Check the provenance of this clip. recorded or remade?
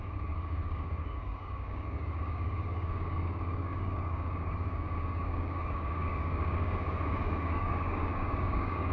remade